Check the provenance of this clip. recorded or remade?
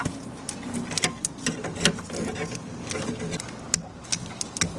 recorded